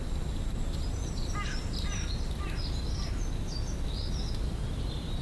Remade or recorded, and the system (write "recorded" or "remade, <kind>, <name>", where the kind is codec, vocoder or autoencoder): recorded